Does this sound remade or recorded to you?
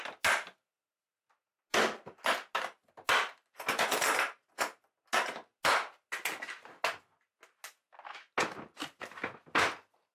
recorded